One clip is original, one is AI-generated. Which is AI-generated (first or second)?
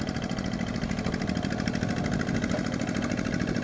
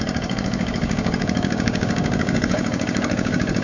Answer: second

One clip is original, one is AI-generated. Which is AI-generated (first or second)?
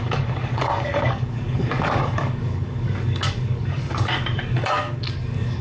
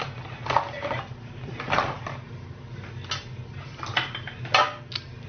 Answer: first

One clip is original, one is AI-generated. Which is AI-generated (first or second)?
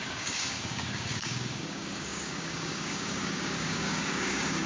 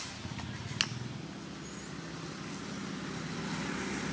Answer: first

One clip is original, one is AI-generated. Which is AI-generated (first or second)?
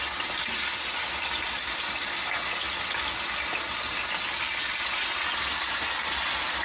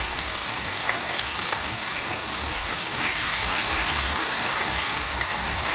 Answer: second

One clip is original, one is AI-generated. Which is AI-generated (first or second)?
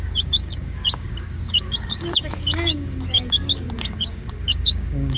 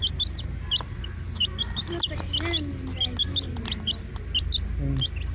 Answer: first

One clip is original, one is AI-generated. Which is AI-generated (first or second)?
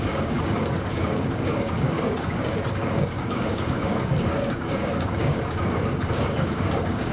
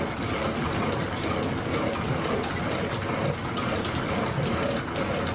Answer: first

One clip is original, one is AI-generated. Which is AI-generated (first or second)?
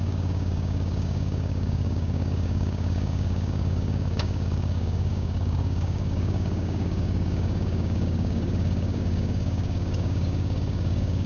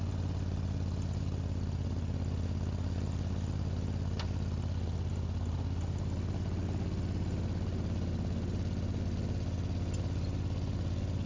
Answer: first